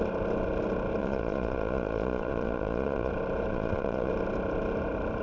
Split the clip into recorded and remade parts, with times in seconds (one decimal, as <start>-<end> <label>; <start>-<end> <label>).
0.0-1.0 recorded; 1.0-3.1 remade; 3.1-3.5 recorded; 3.5-4.1 remade; 4.1-5.2 recorded